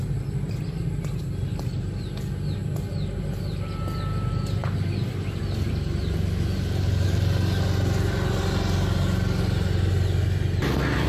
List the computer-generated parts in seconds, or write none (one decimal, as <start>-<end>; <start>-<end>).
none